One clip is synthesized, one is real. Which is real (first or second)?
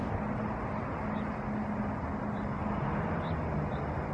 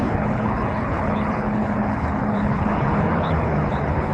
first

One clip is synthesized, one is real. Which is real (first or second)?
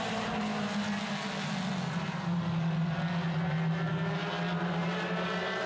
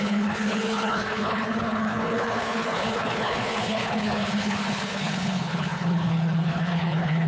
first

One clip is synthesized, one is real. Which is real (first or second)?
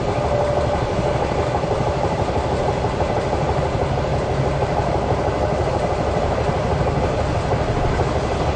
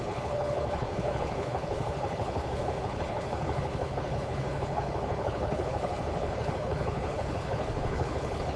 first